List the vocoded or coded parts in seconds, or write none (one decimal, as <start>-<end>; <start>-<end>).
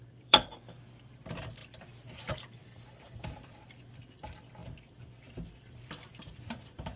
0.0-7.0